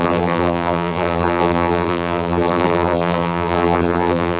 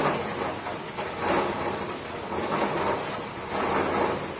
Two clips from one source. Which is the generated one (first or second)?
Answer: first